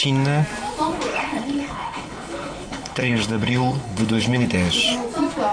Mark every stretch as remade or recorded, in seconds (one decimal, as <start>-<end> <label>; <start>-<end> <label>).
0.0-1.1 recorded; 1.1-4.4 remade; 4.4-5.5 recorded